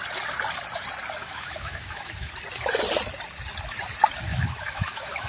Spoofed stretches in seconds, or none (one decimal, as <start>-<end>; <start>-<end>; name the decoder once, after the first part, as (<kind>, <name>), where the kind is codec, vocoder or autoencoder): 1.2-2.3 (autoencoder, DAC-VAE); 4.3-5.3